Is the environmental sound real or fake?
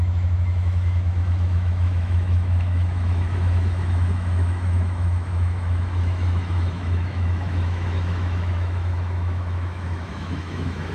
fake